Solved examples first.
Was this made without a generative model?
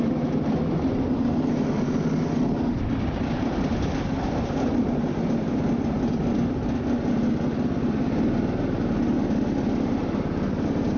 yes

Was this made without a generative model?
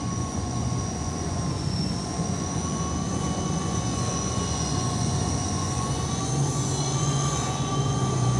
no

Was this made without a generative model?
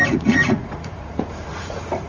no